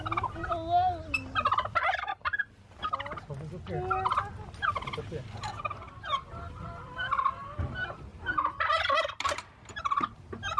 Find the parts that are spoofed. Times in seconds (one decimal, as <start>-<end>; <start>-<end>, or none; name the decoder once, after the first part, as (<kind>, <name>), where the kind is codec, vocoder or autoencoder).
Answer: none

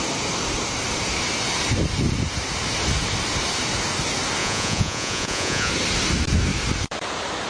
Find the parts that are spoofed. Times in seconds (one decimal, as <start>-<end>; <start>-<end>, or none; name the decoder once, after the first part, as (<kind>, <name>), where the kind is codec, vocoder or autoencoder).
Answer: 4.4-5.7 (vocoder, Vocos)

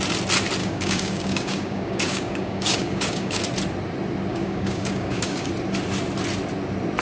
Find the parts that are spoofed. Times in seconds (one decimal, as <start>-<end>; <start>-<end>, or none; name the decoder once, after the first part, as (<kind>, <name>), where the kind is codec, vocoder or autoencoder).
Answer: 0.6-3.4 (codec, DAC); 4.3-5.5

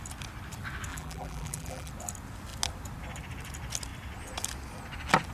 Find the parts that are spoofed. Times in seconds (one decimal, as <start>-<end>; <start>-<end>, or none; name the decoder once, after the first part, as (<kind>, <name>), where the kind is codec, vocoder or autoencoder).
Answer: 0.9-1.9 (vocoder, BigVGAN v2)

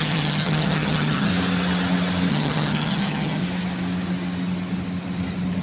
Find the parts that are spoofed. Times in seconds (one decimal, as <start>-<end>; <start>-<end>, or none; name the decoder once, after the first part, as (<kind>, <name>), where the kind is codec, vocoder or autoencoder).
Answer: 0.0-1.3 (vocoder, HiFi-GAN); 2.3-3.4

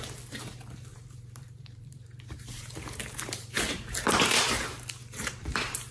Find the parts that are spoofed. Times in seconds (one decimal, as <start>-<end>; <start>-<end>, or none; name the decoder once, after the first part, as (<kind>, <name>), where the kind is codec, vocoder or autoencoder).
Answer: 0.9-4.4 (vocoder, BigVGAN v2); 5.0-5.9

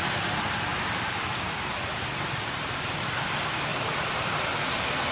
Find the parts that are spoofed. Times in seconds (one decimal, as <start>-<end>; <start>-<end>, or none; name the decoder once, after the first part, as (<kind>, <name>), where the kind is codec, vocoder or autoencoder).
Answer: none